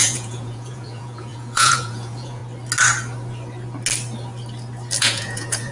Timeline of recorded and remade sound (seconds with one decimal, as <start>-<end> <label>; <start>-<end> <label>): 0.0-2.4 remade; 2.4-5.0 recorded; 5.0-5.7 remade